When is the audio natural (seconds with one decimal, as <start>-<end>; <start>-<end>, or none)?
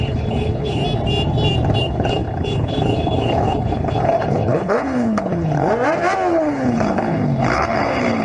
0.8-1.8; 5.7-6.3